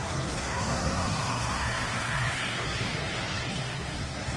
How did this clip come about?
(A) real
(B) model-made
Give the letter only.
B